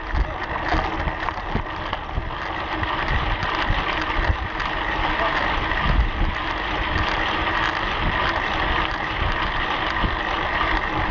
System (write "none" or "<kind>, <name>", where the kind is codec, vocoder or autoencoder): none